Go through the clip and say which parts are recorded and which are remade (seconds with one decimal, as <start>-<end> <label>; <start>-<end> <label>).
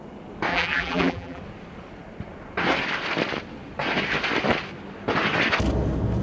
0.0-0.5 recorded; 0.5-1.4 remade; 1.4-6.2 recorded